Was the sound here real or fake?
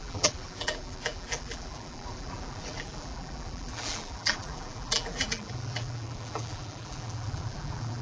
fake